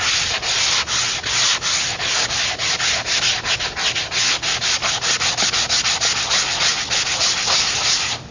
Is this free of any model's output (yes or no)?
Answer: yes